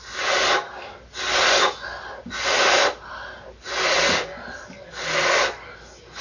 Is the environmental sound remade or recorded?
recorded